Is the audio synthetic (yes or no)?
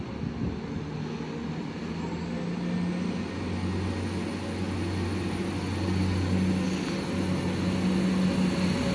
no